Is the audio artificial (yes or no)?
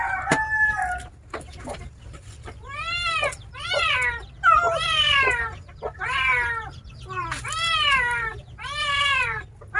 no